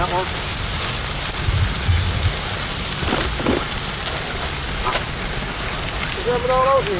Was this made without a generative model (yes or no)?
yes